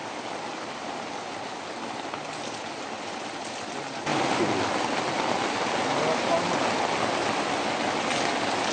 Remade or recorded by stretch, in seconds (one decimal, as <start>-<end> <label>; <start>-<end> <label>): 0.0-8.7 recorded

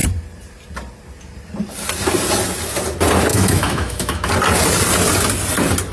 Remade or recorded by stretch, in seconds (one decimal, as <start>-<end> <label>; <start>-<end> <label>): 0.0-3.3 recorded; 3.3-4.3 remade; 4.3-5.9 recorded

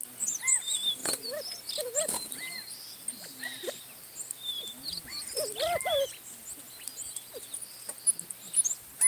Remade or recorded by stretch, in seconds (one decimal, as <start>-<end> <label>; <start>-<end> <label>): 0.0-9.1 recorded

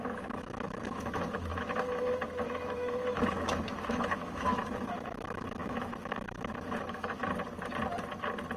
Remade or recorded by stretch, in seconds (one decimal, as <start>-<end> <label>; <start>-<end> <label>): 0.0-7.2 remade; 7.2-8.6 recorded

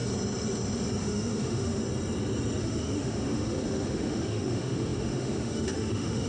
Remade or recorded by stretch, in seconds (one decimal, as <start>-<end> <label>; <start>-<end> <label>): 0.0-1.0 recorded; 1.0-1.8 remade; 1.8-2.6 recorded; 2.6-6.3 remade